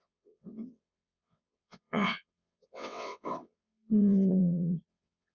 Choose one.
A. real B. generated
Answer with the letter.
B